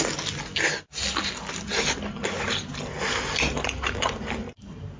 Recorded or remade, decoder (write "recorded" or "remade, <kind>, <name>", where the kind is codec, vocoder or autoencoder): recorded